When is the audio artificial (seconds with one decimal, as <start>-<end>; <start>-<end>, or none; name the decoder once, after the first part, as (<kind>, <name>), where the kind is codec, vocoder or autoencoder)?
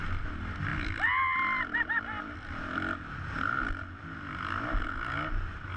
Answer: none